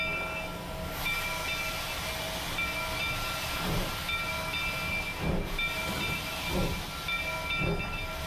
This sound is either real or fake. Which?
real